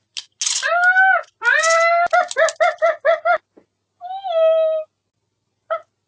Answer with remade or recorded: recorded